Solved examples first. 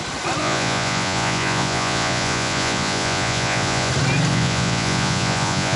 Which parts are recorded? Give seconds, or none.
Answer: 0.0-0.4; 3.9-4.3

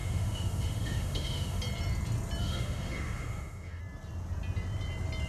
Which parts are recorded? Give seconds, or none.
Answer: 1.6-2.4; 3.8-5.3